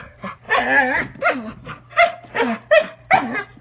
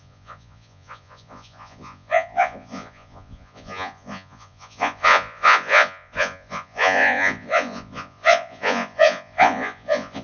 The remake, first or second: second